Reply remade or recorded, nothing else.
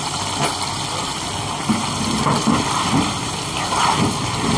remade